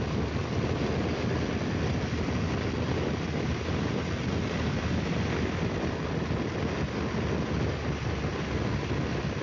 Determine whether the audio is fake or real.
real